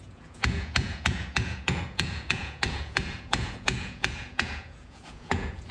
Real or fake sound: fake